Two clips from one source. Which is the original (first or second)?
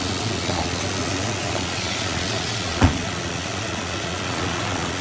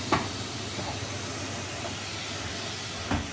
second